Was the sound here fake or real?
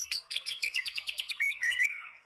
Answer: fake